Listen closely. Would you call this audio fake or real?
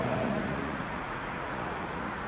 fake